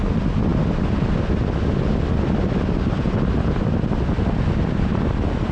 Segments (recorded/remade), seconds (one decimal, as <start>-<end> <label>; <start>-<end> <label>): 0.0-5.5 recorded